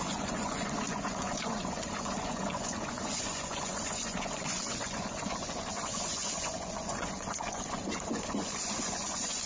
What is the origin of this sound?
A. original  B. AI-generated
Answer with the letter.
B